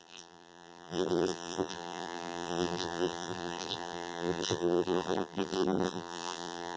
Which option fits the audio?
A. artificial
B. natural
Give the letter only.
A